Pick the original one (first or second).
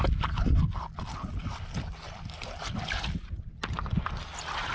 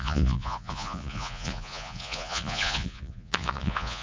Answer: first